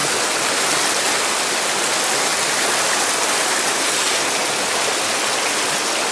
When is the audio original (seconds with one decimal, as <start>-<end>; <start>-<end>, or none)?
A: 0.0-6.1